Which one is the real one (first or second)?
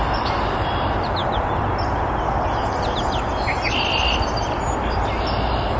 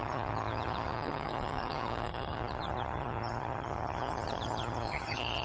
first